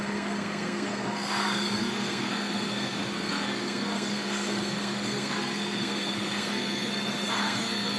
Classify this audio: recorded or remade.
remade